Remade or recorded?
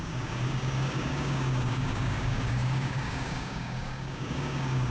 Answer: remade